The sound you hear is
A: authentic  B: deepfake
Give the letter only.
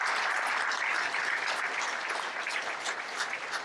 A